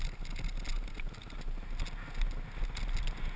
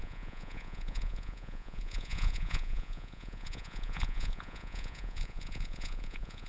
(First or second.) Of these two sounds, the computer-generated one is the second